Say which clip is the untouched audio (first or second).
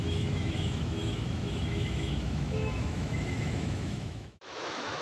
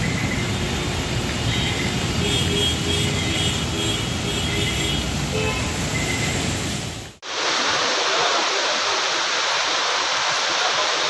second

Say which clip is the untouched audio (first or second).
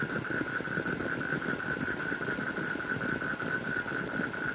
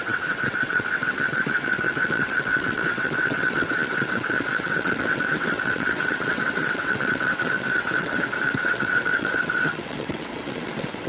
first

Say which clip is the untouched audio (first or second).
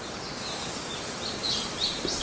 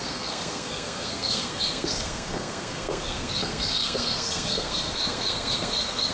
first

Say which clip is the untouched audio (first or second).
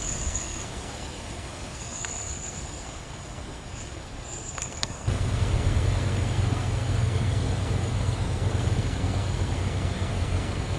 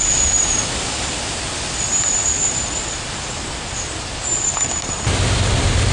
second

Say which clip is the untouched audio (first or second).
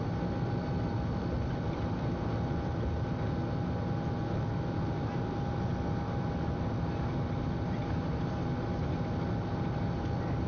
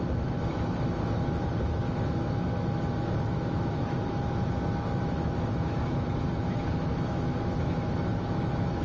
first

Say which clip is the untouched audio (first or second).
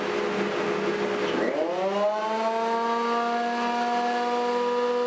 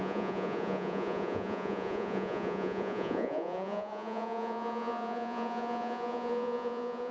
first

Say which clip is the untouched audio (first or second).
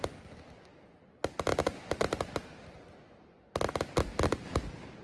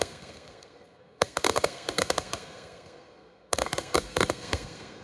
first